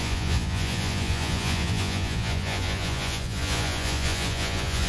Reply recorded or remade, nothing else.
remade